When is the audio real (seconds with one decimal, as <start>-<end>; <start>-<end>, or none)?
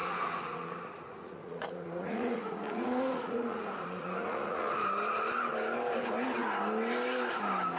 4.7-7.8